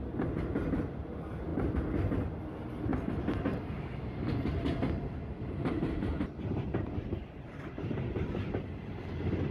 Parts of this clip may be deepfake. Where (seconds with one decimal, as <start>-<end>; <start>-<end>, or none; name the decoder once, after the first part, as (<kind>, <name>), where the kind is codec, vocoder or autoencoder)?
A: none

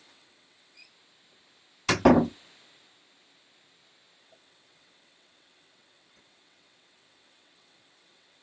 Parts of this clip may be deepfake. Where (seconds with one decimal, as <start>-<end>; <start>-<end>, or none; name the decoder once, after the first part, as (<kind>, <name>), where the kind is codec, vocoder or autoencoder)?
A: 0.0-0.8 (vocoder, WaveNeXt); 4.2-8.4

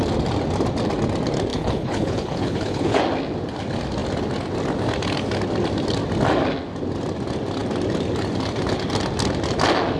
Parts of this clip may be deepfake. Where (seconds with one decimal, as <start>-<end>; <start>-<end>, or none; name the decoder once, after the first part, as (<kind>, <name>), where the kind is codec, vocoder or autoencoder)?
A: 1.5-3.0 (codec, HILCodec)